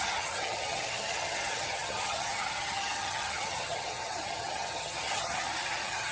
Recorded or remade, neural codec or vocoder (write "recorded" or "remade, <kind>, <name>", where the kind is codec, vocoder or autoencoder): remade, vocoder, HiFi-GAN